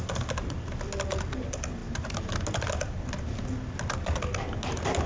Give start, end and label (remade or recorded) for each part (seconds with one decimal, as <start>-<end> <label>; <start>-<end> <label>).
0.0-5.1 recorded